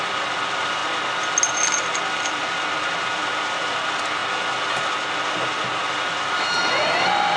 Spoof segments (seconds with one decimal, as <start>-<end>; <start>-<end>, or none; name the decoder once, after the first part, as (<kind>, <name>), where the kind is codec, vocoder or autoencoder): 0.0-0.8 (vocoder, BigVGAN v2); 1.4-4.2; 5.9-7.4